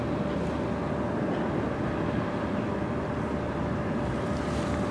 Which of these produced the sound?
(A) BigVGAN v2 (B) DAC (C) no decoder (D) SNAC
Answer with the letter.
C